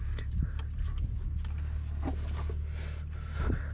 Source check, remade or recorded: recorded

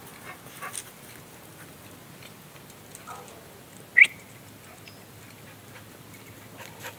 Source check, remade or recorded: recorded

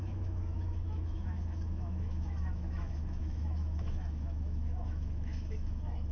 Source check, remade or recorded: remade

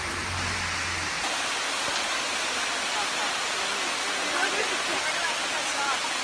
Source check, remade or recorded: recorded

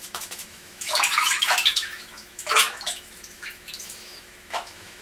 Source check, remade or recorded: remade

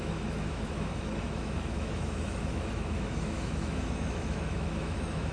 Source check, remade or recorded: remade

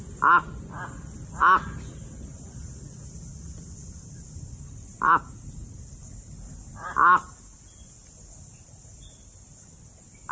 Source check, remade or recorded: recorded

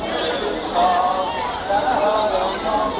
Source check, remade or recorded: recorded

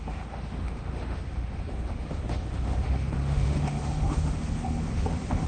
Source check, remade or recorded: remade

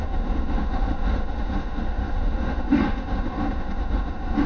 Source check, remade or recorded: remade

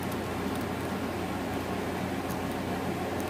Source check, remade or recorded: recorded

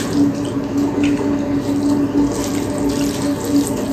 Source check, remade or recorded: recorded